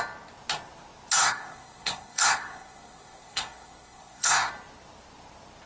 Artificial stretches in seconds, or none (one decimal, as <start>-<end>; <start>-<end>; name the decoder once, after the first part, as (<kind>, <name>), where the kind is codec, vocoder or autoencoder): 1.2-4.5 (codec, SNAC)